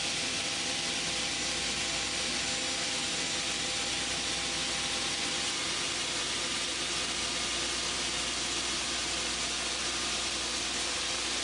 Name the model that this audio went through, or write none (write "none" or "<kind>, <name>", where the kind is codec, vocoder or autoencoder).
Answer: none